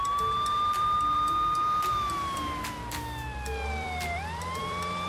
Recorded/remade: remade